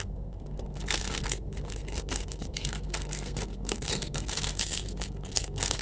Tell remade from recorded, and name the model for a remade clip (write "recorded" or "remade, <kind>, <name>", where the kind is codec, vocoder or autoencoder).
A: remade, codec, SNAC